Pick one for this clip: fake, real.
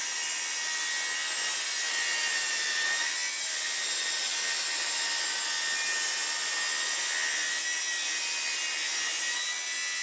real